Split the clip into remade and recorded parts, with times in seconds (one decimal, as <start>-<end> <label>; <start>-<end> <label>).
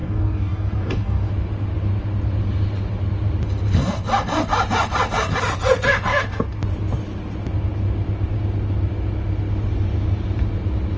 0.0-1.3 remade; 1.3-11.0 recorded